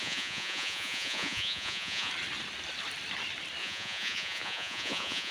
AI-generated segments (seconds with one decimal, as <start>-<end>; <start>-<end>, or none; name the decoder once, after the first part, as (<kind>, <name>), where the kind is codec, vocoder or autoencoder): 0.0-2.1 (vocoder, Vocos); 3.6-5.3